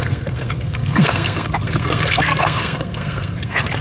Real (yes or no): no